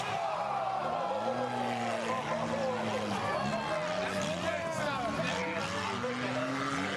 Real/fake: real